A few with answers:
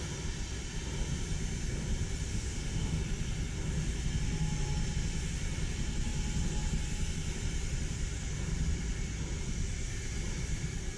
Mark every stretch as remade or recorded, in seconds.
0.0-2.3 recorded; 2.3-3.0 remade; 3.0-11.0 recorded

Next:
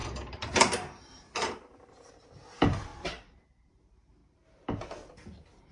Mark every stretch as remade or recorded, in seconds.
0.0-2.9 remade; 2.9-3.7 recorded; 3.7-4.2 remade; 4.2-5.7 recorded

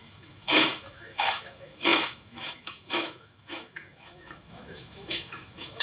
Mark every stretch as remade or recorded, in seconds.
0.0-5.8 remade

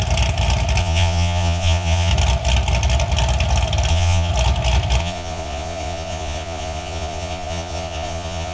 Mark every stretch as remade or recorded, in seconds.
0.0-0.8 recorded; 0.8-2.1 remade; 2.1-3.9 recorded; 3.9-4.3 remade; 4.3-5.0 recorded; 5.0-8.5 remade

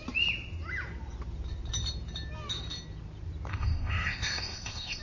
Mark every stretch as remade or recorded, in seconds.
0.0-3.5 recorded; 3.5-5.0 remade

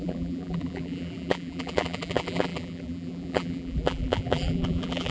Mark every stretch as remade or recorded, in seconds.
0.0-5.1 remade

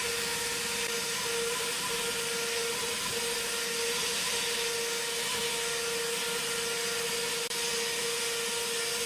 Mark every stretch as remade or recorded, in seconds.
0.0-9.1 recorded

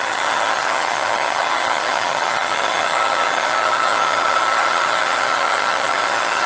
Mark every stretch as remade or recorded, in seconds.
0.0-6.5 remade